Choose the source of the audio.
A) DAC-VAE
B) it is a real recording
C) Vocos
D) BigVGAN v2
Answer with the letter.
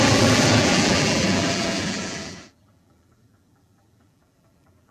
D